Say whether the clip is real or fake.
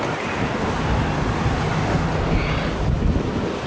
real